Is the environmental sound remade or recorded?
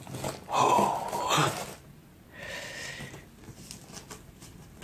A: recorded